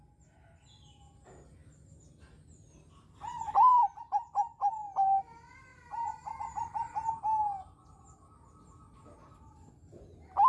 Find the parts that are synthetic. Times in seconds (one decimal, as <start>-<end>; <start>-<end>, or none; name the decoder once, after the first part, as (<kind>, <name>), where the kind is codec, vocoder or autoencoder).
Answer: none